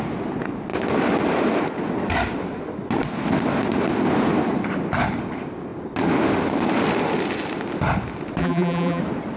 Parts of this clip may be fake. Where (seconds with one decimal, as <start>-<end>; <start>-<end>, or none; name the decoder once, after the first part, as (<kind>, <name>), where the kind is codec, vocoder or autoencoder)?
8.4-9.0 (vocoder, BigVGAN v2)